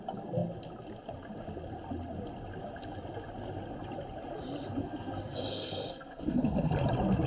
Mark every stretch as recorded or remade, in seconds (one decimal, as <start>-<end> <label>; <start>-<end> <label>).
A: 0.0-4.8 recorded; 4.8-6.7 remade; 6.7-7.3 recorded